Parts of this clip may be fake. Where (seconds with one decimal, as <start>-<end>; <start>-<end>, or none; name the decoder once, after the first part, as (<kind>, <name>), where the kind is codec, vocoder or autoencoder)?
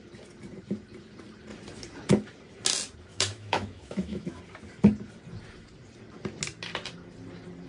3.1-4.4 (autoencoder, DAC-VAE)